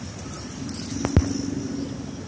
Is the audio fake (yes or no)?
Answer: no